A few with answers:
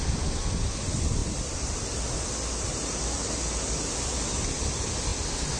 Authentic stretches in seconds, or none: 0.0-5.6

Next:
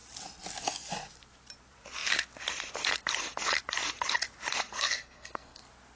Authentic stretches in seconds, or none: 0.0-4.7; 5.6-6.0

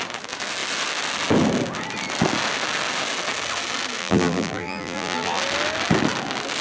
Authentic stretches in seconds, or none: 0.0-4.0; 5.4-6.6

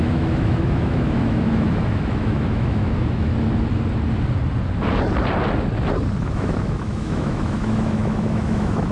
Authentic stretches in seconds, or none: 3.3-6.2